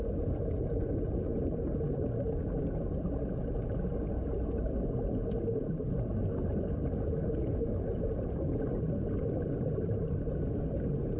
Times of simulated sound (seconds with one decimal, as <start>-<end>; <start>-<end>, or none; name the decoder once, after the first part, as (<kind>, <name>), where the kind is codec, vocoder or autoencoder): none